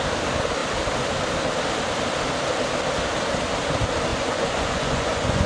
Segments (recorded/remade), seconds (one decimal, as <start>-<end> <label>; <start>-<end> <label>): 0.0-4.1 recorded; 4.1-5.5 remade